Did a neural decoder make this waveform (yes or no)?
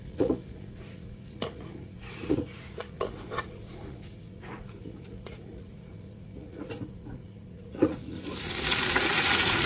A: yes